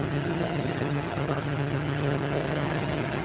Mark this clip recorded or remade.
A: remade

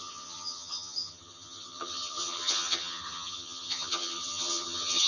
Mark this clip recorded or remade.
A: remade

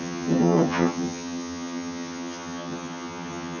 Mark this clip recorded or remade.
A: remade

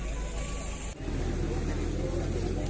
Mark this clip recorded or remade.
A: recorded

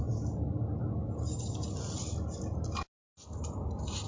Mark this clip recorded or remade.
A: recorded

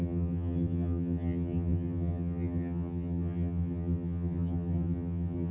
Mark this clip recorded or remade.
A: remade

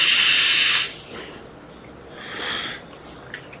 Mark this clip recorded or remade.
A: recorded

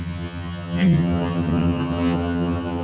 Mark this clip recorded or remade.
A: remade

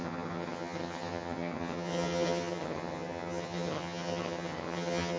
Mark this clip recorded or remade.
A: remade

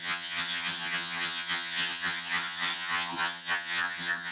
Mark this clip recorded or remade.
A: remade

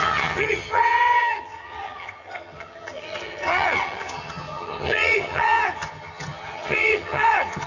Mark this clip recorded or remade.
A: remade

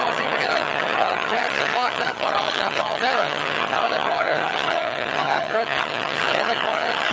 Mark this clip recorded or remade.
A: remade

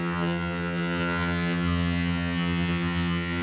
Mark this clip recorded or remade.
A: remade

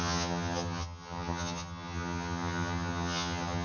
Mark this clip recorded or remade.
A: remade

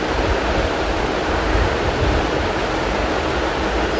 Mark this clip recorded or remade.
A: recorded